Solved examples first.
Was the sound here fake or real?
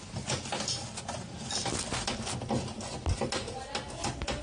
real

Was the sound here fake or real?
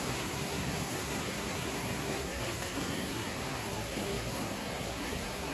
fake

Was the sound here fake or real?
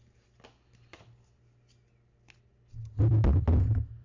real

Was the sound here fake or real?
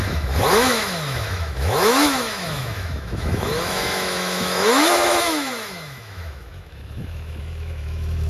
fake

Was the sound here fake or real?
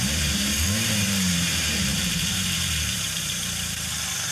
fake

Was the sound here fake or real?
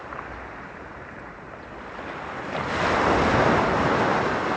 real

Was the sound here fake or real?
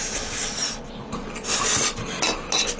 real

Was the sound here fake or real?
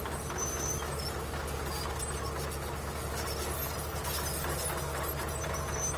real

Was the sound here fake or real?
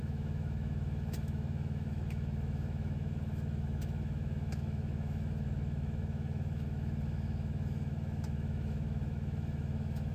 fake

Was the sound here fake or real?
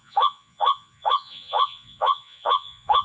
fake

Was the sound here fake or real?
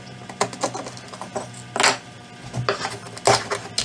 real